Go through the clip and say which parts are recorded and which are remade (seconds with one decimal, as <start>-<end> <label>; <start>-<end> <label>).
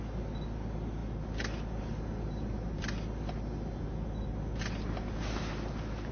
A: 0.0-6.1 recorded